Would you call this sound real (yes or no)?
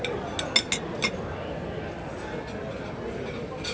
yes